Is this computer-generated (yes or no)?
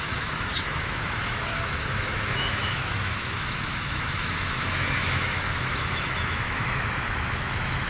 yes